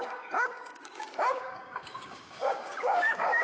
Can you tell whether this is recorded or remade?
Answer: remade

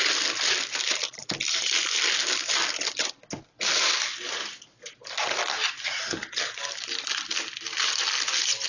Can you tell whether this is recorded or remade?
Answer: recorded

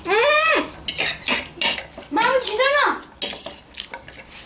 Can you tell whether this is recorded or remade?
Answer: recorded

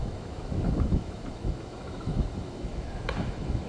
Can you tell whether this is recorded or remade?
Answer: remade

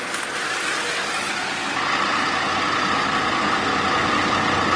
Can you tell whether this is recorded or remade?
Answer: recorded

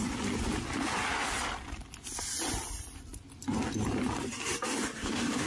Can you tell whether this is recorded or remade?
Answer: recorded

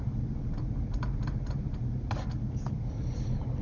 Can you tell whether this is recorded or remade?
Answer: recorded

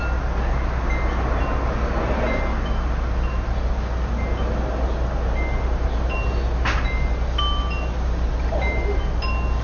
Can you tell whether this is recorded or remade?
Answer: recorded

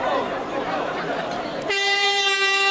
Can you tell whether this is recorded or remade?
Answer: remade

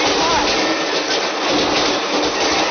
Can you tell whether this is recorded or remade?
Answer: recorded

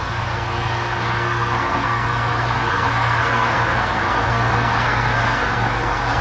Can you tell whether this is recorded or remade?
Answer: remade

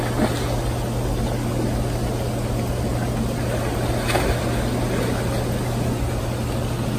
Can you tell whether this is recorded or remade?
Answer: recorded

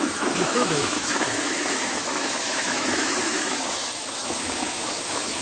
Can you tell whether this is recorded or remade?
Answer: remade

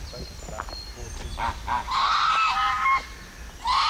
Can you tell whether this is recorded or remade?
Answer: recorded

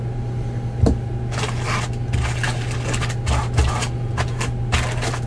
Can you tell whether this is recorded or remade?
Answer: recorded